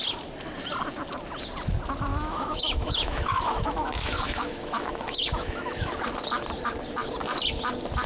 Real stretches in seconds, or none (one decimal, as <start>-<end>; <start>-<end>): 0.0-2.1; 6.0-8.1